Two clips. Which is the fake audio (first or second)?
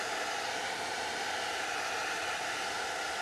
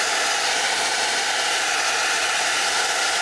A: second